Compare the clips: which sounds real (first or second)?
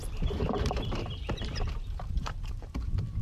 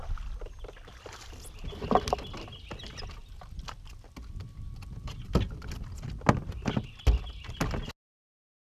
second